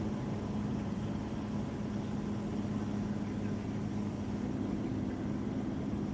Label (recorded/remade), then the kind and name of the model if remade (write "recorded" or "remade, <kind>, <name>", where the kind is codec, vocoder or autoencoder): recorded